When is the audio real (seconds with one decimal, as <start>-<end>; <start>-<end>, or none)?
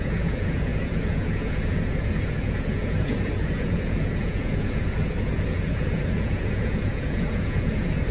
none